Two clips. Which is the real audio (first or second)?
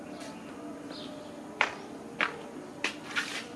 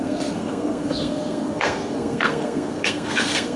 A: first